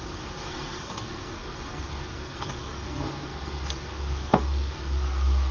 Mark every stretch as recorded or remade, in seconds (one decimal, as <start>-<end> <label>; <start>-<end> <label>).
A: 0.0-5.5 remade